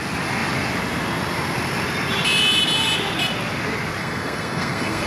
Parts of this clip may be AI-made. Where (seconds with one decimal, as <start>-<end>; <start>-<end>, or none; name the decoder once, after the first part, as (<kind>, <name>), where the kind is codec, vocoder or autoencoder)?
4.0-5.1 (codec, SNAC)